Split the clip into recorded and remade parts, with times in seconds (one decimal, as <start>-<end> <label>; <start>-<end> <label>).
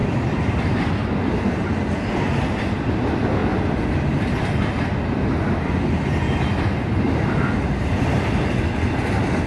0.0-9.5 recorded